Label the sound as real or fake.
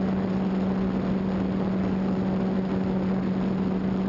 real